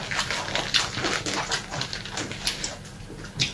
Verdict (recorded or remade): recorded